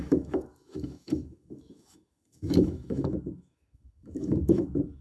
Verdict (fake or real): fake